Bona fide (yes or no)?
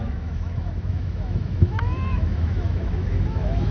no